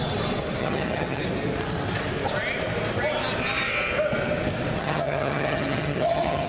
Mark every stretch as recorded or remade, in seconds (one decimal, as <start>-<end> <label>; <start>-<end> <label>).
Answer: 0.0-0.6 recorded; 0.6-1.2 remade; 1.2-4.8 recorded; 4.8-6.5 remade